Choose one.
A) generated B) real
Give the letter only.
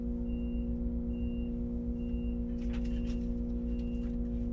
B